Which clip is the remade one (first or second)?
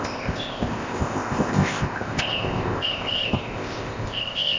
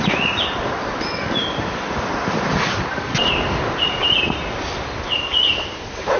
first